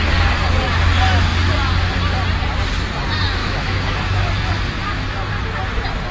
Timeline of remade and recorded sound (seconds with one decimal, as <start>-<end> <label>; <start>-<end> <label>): 0.0-3.4 recorded; 3.4-4.5 remade; 4.5-6.1 recorded